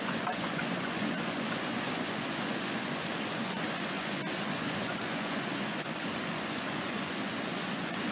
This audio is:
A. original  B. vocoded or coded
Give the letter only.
B